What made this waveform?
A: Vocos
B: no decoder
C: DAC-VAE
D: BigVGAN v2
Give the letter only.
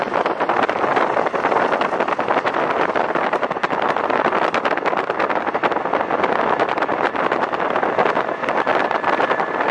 B